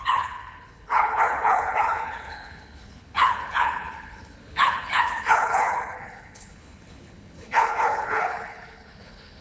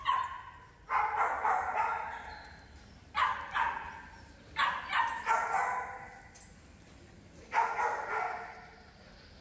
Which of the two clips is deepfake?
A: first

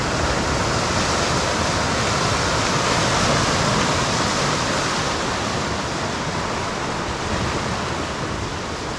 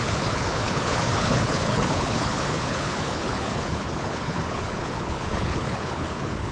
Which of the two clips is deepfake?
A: second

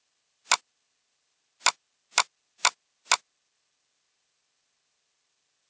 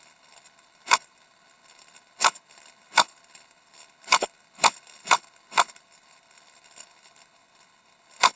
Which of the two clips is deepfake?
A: second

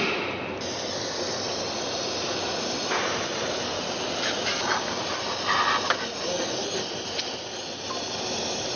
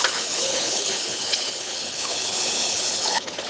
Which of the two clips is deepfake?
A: second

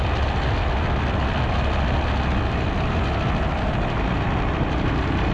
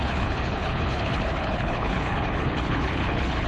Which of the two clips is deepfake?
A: second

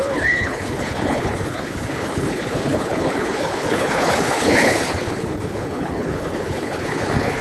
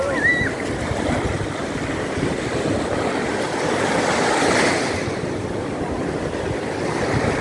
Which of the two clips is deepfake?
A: first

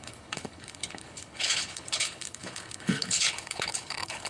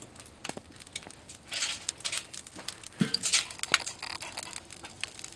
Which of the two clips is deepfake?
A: first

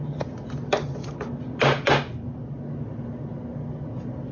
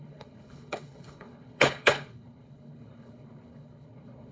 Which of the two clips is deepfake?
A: second